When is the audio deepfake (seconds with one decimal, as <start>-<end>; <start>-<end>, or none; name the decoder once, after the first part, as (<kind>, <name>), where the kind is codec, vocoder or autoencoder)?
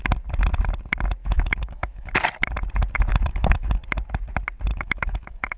1.2-2.1 (autoencoder, DAC-VAE); 3.1-3.8; 4.7-5.6